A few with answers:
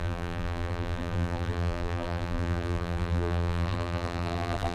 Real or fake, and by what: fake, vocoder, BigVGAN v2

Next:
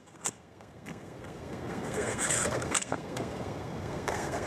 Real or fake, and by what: fake, codec, SNAC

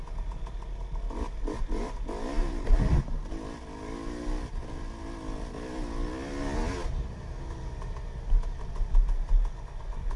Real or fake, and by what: real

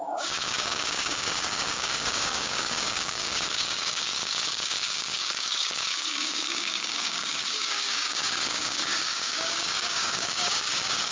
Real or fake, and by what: fake, codec, DAC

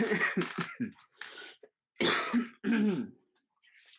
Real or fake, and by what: real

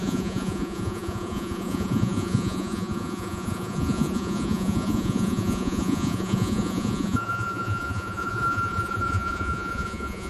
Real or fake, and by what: fake, vocoder, Vocos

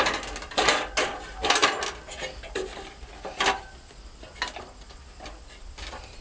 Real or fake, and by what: real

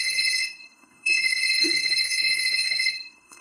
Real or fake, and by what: fake, codec, SNAC